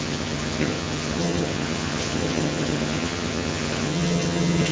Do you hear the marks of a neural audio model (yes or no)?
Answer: yes